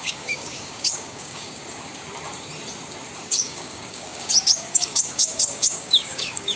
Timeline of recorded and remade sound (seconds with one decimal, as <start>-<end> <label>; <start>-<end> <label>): 0.0-1.6 remade; 1.6-3.2 recorded; 3.2-6.6 remade